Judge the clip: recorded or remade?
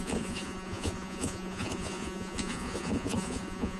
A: remade